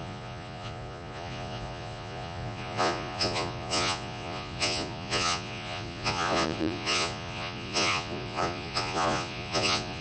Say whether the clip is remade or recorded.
remade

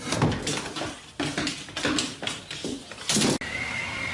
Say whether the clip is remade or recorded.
recorded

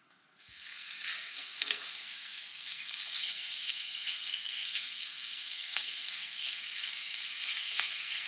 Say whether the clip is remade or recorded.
remade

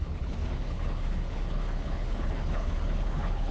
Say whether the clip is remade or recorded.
remade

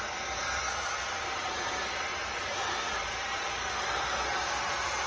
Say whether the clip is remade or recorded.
recorded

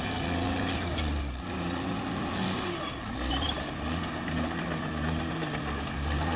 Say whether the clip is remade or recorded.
recorded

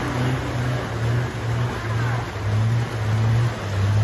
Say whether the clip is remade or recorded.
recorded